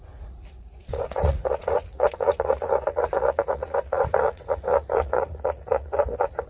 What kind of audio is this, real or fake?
fake